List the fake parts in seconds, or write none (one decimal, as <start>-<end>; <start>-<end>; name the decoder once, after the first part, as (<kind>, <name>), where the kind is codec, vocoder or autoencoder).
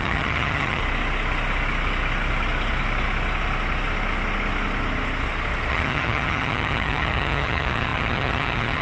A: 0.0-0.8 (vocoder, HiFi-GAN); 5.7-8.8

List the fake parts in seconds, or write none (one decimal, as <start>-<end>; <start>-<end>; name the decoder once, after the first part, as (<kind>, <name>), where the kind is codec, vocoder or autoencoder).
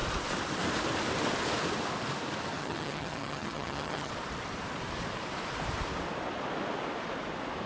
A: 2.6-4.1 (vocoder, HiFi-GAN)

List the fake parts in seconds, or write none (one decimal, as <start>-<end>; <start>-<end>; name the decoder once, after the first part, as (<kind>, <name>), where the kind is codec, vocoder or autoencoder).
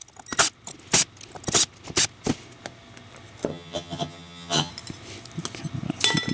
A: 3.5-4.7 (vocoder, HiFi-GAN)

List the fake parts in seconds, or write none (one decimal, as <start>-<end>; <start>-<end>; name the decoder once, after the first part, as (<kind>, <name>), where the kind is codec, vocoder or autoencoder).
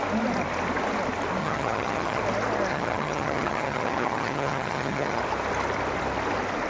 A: 1.4-2.2 (vocoder, HiFi-GAN); 2.7-5.2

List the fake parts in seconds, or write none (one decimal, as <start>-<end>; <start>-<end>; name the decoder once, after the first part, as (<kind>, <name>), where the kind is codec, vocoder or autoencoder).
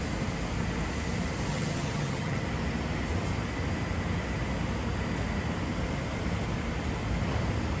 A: 1.5-2.4 (vocoder, HiFi-GAN)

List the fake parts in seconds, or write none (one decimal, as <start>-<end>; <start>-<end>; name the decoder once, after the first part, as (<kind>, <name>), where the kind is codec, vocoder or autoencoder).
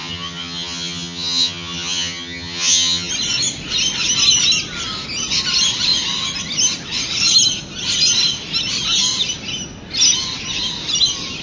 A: 0.0-3.1 (vocoder, HiFi-GAN)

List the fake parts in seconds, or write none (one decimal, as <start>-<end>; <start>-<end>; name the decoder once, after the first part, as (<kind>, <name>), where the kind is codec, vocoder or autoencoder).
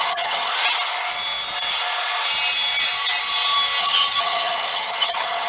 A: 0.0-0.5 (vocoder, HiFi-GAN); 3.8-5.5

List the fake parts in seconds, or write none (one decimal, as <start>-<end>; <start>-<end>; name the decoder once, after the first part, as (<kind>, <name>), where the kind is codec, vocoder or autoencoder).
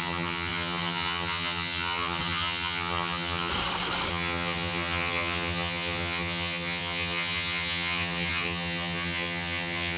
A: 0.0-3.5 (vocoder, HiFi-GAN); 4.1-10.0